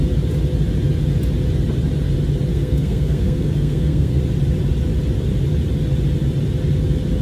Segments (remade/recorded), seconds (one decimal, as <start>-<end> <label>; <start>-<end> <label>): 0.0-2.5 recorded; 2.5-4.2 remade; 4.2-7.2 recorded